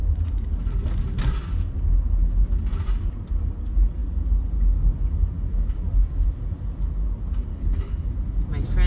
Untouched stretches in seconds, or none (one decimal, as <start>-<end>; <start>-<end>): 0.0-7.5; 8.1-8.9